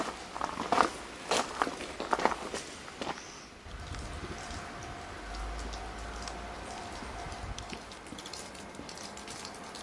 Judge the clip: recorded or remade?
recorded